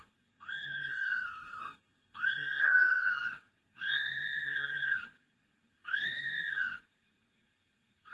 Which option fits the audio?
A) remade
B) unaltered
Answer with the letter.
A